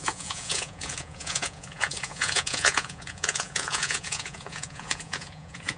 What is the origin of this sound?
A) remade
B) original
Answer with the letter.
A